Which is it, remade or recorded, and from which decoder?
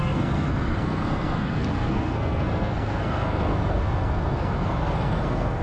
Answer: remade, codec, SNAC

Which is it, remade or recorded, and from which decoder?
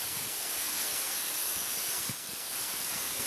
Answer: remade, codec, SNAC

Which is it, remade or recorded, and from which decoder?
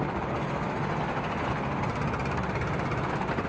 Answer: recorded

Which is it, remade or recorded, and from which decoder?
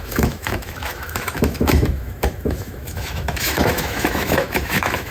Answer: remade, autoencoder, DAC-VAE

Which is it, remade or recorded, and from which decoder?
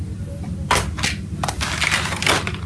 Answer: recorded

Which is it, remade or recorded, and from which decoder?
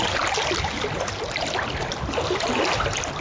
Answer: recorded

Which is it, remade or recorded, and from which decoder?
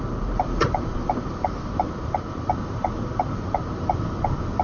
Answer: remade, vocoder, BigVGAN v2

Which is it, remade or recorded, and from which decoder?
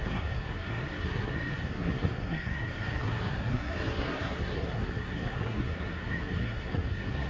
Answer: remade, codec, SNAC